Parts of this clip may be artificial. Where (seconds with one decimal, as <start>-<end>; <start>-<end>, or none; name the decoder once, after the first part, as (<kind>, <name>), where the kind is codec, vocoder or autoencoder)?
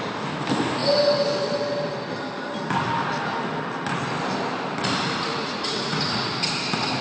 5.3-6.3 (vocoder, Vocos)